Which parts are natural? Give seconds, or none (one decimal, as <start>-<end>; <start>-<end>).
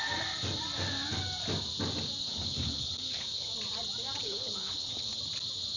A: 0.0-2.2; 3.5-4.2; 5.2-5.8